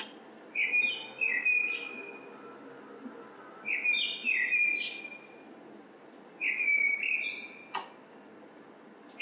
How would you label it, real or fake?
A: real